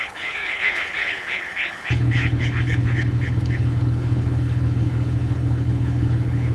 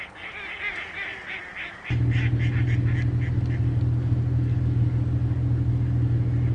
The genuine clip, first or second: second